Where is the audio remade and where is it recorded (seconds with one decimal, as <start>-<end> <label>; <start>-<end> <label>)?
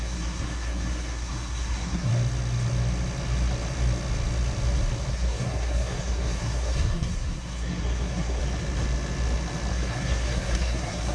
0.0-2.1 remade; 2.1-5.1 recorded; 5.1-8.4 remade; 8.4-9.7 recorded; 9.7-11.1 remade